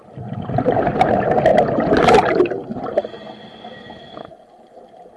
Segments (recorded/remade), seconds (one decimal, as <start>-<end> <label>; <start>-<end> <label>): 0.0-5.2 recorded